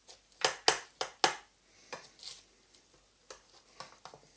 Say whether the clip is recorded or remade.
recorded